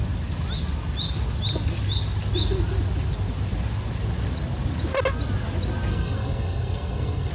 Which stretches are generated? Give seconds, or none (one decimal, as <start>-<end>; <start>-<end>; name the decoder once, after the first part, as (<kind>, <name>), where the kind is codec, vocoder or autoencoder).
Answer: 5.9-7.3 (codec, SNAC)